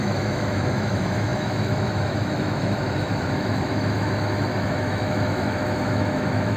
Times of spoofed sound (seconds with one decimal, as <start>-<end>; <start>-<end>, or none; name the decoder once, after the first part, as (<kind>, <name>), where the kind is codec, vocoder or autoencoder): 0.0-6.6 (autoencoder, DAC-VAE)